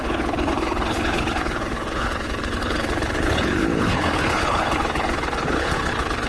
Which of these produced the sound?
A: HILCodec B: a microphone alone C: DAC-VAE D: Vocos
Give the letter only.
A